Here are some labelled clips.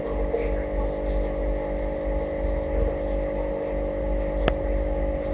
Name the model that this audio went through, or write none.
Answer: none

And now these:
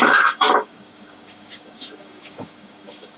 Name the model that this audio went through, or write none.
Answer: codec, DAC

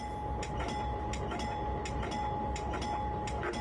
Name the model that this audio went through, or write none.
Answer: none